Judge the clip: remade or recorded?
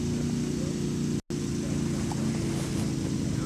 recorded